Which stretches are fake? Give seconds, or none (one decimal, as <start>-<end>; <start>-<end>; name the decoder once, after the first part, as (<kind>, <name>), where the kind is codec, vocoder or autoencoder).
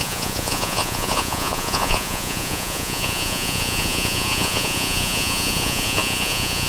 0.0-6.7 (vocoder, Vocos)